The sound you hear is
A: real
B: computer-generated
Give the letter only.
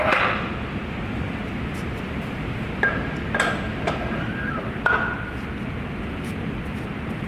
A